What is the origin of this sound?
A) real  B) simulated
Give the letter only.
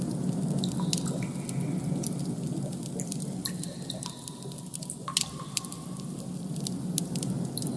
A